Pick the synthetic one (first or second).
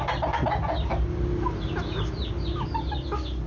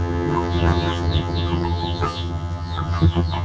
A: second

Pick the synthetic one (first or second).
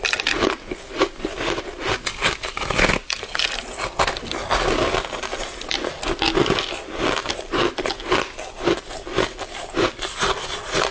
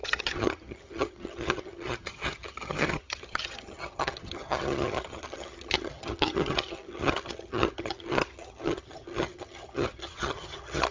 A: second